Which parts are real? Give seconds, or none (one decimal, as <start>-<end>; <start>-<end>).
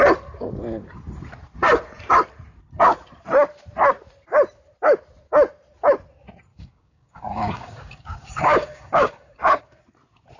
0.0-6.5; 9.8-10.4